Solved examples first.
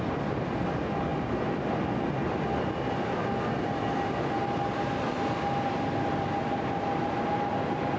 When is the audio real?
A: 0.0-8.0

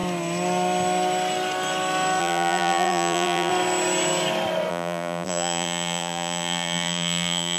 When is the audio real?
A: 0.0-2.2; 3.5-4.7

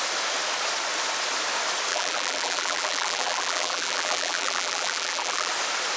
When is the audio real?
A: 0.0-1.9; 5.5-6.0